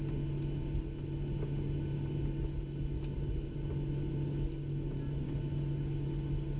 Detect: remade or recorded recorded